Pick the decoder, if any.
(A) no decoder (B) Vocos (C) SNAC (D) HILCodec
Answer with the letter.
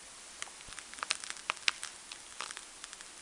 A